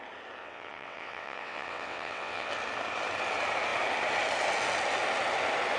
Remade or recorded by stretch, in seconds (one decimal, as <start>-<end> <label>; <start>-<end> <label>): 0.0-0.4 recorded; 0.4-2.5 remade; 2.5-5.8 recorded